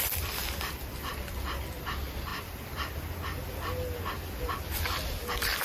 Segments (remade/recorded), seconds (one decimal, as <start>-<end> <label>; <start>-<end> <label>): 0.0-5.6 recorded